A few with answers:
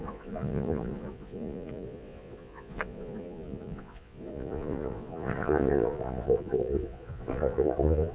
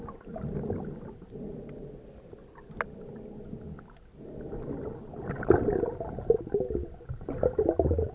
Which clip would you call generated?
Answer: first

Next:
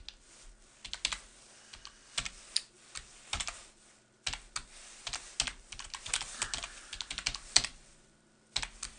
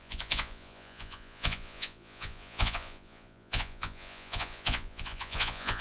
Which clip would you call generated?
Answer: second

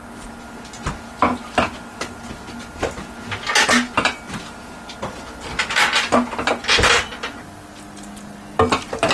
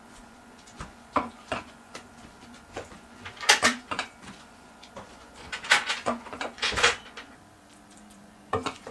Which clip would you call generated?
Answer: second